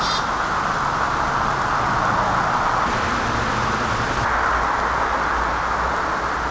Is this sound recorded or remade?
recorded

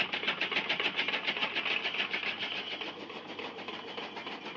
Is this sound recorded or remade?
recorded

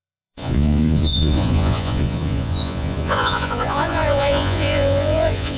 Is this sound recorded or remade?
remade